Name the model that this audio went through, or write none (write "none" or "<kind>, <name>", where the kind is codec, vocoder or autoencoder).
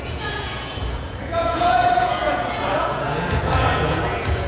vocoder, Vocos